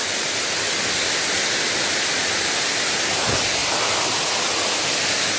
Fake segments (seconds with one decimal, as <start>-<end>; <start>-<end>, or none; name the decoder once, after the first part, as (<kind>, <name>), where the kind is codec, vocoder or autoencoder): none